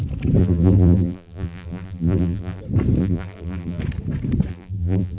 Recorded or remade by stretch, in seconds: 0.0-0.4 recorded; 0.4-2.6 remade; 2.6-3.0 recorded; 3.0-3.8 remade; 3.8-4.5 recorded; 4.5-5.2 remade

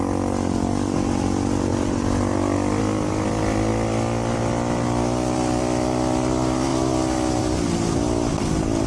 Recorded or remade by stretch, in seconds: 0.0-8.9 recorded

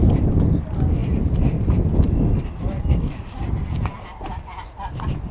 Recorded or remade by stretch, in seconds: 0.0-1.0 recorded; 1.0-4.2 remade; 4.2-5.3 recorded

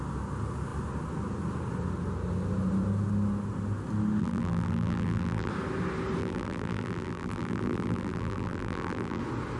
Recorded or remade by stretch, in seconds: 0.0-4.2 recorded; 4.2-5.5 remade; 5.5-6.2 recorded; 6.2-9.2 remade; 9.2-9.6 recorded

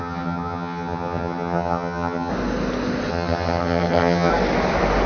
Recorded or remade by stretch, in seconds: 0.0-2.3 remade; 2.3-3.1 recorded; 3.1-4.3 remade; 4.3-5.1 recorded

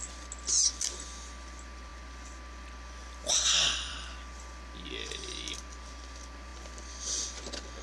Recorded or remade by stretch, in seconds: 0.0-7.8 recorded